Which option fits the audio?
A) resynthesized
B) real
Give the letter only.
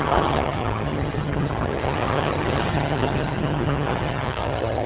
A